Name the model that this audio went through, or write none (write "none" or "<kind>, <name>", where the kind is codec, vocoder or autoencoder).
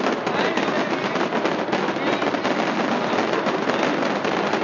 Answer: none